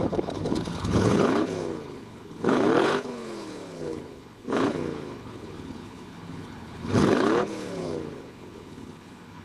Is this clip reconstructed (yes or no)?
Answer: yes